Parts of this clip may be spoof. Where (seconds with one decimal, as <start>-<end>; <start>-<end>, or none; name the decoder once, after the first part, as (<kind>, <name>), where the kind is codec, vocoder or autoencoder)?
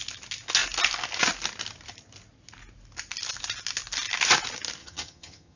4.8-5.6 (vocoder, HiFi-GAN)